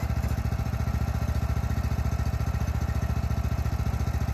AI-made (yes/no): no